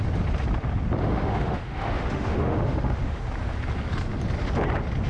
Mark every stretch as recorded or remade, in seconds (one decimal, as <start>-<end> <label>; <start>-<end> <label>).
0.0-1.0 recorded; 1.0-3.2 remade; 3.2-5.1 recorded